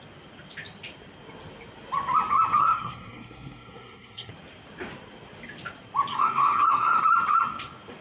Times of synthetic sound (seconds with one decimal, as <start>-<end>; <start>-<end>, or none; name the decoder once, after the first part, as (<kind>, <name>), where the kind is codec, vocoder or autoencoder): 2.6-4.3 (codec, SNAC); 6.1-7.0